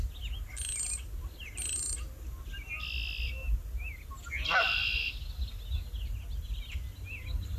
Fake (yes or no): no